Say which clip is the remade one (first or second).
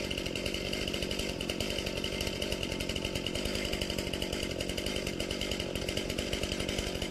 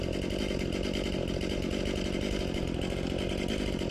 first